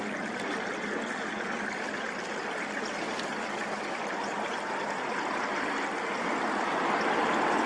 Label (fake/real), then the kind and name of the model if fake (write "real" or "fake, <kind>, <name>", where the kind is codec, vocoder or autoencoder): real